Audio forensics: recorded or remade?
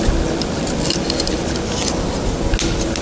recorded